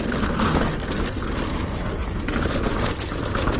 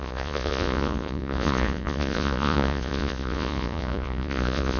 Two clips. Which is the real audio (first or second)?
first